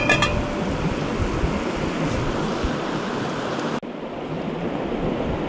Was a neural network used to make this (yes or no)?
no